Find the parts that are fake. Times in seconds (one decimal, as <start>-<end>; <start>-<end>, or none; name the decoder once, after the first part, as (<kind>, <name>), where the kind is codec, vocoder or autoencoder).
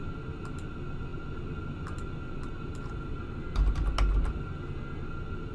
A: none